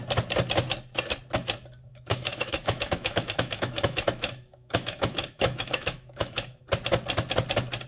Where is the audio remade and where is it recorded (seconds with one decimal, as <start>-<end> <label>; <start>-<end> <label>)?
0.0-1.9 recorded; 1.9-6.6 remade; 6.6-7.9 recorded